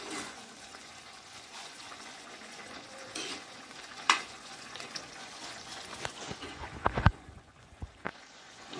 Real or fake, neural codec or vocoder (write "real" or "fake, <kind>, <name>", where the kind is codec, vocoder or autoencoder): fake, vocoder, Vocos